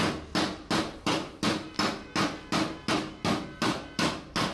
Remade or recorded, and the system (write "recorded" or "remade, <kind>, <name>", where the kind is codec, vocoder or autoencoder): recorded